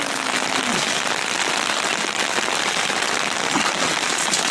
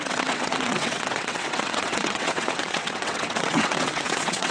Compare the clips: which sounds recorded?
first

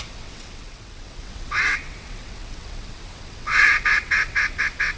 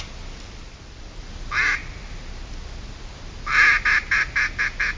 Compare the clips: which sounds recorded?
second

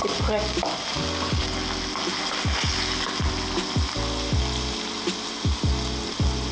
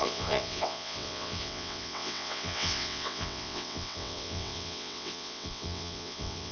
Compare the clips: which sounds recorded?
first